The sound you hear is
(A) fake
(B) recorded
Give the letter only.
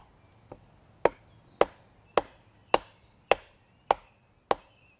B